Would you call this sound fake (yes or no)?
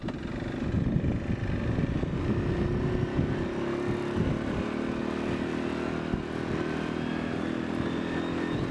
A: no